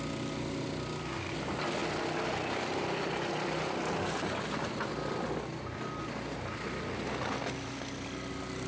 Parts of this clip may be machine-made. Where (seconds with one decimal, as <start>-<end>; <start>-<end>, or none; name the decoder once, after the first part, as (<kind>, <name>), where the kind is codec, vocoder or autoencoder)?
none